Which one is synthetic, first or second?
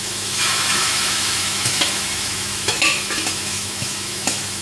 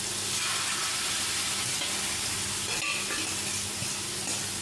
first